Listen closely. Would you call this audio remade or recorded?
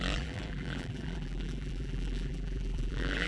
remade